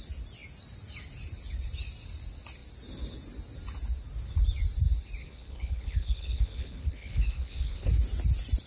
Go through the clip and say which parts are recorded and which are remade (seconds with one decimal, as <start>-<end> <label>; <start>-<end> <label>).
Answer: 0.0-5.2 recorded; 5.2-7.9 remade; 7.9-8.7 recorded